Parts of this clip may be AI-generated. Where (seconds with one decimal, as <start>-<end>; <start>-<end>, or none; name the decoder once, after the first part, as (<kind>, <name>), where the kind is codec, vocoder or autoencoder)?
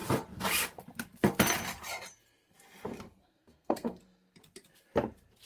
3.2-4.0 (codec, SNAC)